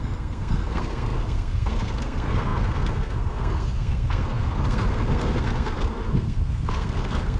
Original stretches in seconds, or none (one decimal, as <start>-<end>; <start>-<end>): none